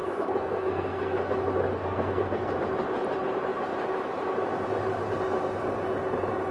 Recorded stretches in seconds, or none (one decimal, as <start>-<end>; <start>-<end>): 1.2-1.7; 2.5-6.5